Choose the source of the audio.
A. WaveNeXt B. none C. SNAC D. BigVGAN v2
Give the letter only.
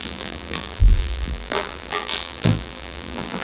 D